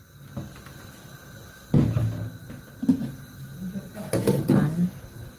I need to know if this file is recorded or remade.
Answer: recorded